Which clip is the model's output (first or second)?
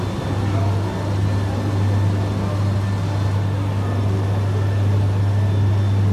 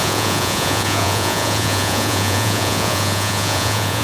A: second